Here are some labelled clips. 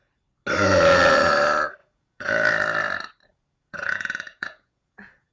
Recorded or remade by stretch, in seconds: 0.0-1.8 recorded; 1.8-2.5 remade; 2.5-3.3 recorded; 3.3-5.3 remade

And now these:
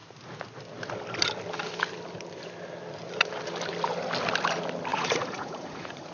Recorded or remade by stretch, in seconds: 0.0-4.9 recorded; 4.9-6.1 remade

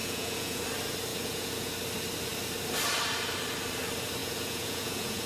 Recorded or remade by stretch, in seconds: 0.0-0.6 remade; 0.6-1.1 recorded; 1.1-1.7 remade; 1.7-4.2 recorded; 4.2-5.3 remade

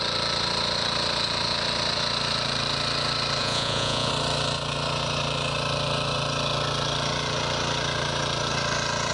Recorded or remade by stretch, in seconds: 0.0-3.4 recorded; 3.4-4.1 remade; 4.1-9.1 recorded